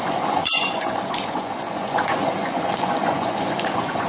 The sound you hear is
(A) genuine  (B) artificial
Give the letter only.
B